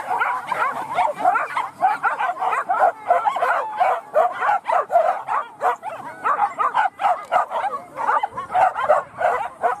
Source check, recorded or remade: recorded